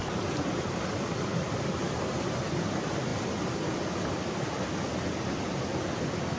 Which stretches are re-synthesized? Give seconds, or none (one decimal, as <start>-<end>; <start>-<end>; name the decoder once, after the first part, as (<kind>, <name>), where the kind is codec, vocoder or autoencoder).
none